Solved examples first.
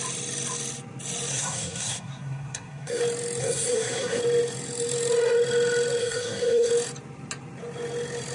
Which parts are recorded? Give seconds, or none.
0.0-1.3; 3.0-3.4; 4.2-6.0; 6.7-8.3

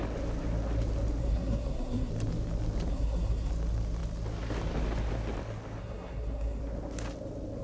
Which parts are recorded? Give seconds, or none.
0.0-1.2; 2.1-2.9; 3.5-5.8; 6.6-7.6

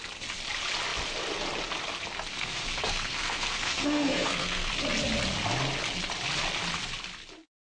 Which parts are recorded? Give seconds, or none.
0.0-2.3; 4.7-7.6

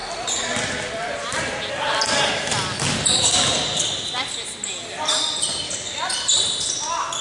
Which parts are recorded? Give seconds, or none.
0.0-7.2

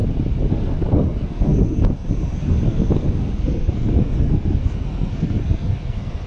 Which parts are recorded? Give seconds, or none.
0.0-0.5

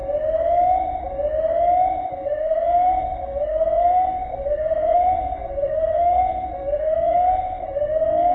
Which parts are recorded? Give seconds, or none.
0.0-2.1

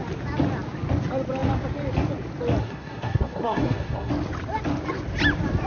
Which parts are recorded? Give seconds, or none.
0.0-2.6; 4.1-5.7